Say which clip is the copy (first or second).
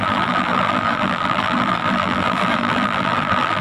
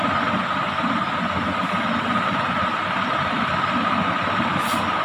first